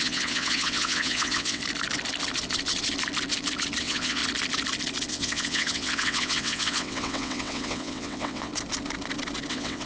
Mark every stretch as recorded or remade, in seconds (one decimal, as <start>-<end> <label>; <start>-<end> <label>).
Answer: 0.0-1.6 remade; 1.6-3.8 recorded; 3.8-4.2 remade; 4.2-5.1 recorded; 5.1-8.5 remade; 8.5-9.5 recorded; 9.5-9.9 remade